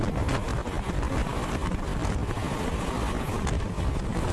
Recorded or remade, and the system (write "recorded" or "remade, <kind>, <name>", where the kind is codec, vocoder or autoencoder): recorded